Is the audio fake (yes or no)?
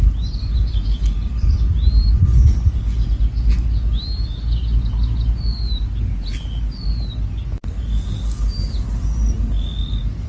no